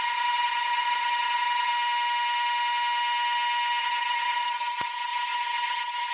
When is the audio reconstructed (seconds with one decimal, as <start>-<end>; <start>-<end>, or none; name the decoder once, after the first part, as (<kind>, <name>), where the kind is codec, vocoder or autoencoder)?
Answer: 0.0-1.7 (vocoder, HiFi-GAN); 3.8-6.1